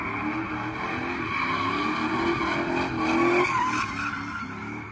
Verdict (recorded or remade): recorded